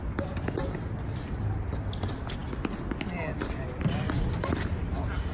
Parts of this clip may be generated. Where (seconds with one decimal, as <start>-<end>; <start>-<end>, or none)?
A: none